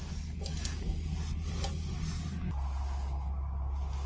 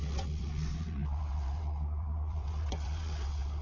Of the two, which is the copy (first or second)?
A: second